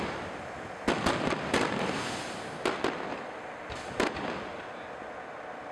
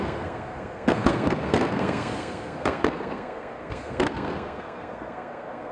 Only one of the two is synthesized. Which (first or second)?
second